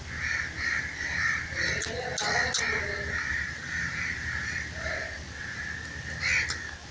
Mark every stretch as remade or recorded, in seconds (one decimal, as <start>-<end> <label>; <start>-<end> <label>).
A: 0.0-3.3 recorded; 3.3-4.9 remade; 4.9-6.9 recorded